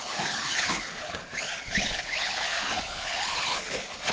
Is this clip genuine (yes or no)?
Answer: no